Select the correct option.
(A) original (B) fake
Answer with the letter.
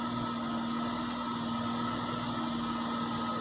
A